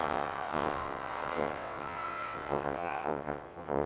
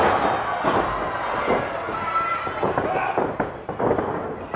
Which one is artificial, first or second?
first